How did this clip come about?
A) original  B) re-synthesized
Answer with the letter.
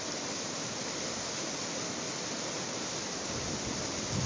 A